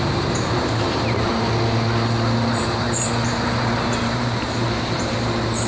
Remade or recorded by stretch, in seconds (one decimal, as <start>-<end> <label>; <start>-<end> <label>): 0.0-1.3 remade; 1.3-2.6 recorded; 2.6-5.7 remade